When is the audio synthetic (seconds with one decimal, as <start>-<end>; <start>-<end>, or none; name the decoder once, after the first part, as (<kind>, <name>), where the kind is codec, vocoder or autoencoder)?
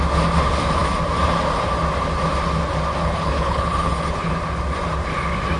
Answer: 3.0-4.3 (codec, HILCodec)